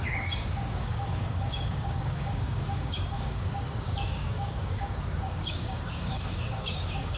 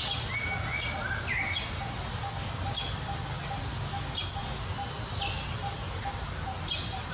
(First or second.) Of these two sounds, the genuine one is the second